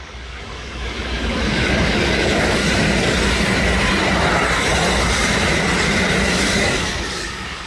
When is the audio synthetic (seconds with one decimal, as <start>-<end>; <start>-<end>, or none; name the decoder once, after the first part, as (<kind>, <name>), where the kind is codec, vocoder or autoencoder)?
0.0-2.6 (codec, DAC); 6.4-7.7